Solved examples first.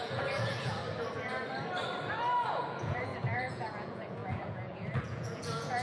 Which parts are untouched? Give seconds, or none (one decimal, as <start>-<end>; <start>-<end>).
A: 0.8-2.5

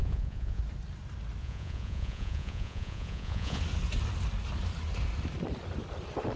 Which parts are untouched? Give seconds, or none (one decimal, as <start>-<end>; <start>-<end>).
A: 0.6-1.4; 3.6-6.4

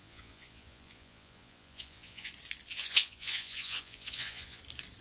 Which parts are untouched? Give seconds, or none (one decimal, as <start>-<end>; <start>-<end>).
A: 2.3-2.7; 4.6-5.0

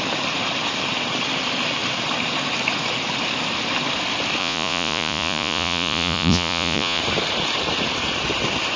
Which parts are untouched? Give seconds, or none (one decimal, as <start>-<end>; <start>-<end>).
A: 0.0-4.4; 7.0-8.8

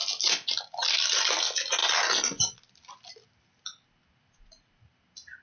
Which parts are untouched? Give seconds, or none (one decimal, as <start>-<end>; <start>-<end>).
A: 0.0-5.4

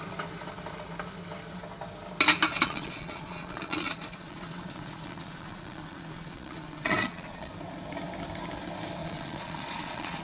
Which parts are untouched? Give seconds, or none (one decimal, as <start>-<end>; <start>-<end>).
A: 0.0-2.5; 7.5-9.0